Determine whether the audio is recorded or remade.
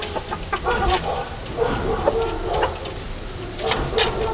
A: recorded